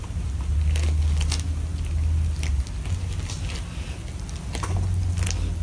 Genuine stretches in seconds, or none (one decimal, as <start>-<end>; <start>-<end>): 0.0-5.6